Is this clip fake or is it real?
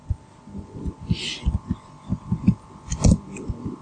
real